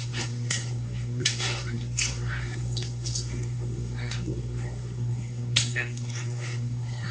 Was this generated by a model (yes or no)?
yes